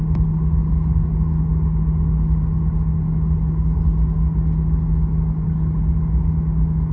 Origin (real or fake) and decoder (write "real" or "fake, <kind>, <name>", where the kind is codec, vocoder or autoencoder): real